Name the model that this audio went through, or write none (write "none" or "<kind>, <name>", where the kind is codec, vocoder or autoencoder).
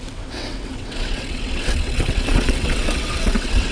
vocoder, WaveNeXt